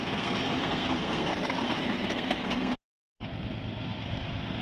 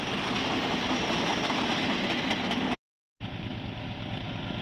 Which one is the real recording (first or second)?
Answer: second